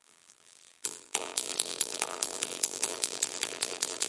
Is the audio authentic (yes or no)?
no